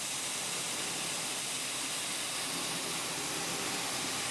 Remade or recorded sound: recorded